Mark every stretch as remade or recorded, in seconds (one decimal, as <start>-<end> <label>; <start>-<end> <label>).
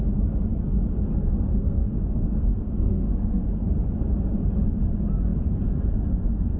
0.0-1.5 recorded; 1.5-3.5 remade; 3.5-6.6 recorded